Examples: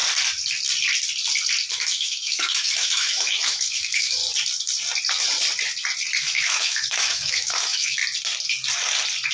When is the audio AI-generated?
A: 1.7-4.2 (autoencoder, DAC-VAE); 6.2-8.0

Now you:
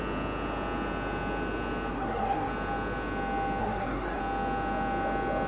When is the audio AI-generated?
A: 1.9-2.5 (codec, SNAC); 3.6-4.2

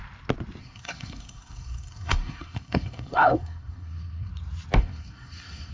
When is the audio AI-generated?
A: 0.6-4.3 (codec, SNAC); 4.8-5.7

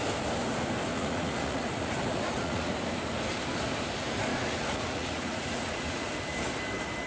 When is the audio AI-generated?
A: 0.9-2.7 (vocoder, Vocos); 4.3-6.1

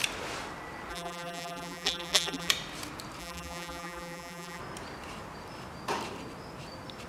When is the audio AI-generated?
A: 0.9-2.5 (vocoder, BigVGAN v2); 3.2-4.6

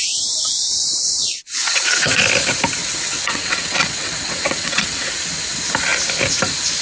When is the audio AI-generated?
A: 1.2-2.2 (vocoder, WaveNeXt); 2.8-5.1

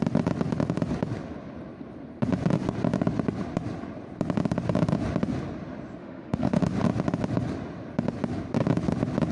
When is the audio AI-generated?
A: 6.0-6.6 (autoencoder, DAC-VAE)

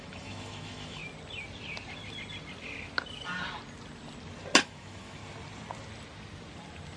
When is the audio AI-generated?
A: 0.0-1.0 (autoencoder, DAC-VAE); 4.6-5.2